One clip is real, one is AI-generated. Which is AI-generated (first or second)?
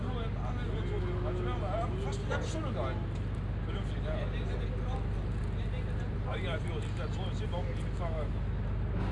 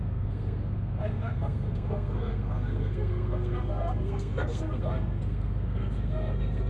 second